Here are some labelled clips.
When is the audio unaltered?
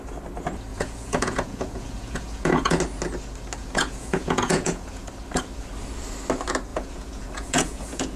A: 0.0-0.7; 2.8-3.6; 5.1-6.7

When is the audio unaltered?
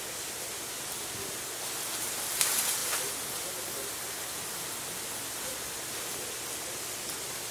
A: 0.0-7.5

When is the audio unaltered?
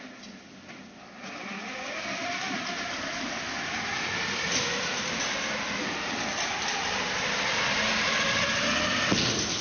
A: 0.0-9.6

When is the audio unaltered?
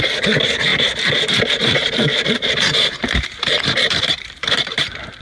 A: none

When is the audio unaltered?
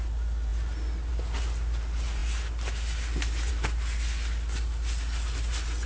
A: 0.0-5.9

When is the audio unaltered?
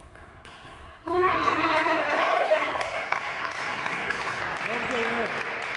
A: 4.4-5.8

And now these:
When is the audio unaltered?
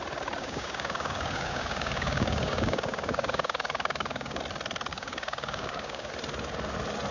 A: 0.0-0.4; 4.4-4.9; 6.1-7.1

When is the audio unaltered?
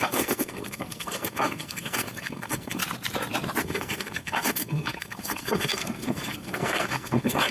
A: 2.8-3.6